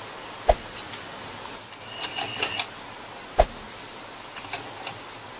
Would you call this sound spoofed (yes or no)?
no